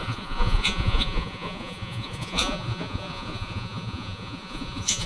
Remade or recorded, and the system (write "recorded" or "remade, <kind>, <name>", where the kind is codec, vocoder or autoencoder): remade, vocoder, Vocos